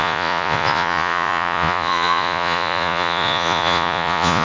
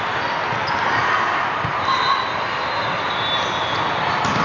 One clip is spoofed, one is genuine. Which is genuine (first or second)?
second